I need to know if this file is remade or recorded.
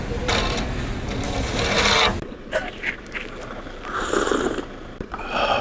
recorded